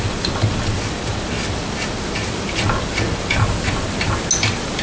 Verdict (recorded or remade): recorded